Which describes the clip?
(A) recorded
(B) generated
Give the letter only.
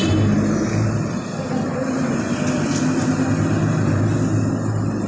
A